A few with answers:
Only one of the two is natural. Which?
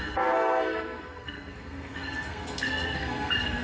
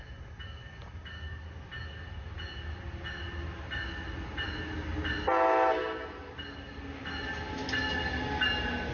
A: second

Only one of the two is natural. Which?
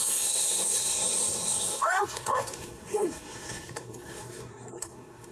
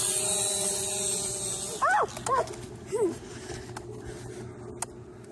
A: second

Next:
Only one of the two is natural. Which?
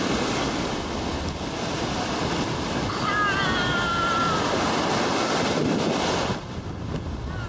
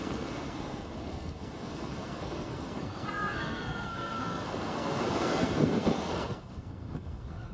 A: first